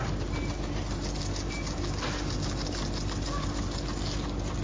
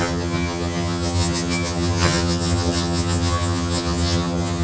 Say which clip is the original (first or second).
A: first